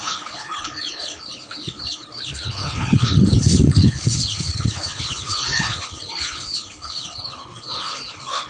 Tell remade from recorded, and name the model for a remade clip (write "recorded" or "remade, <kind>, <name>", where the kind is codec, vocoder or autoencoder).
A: remade, codec, HILCodec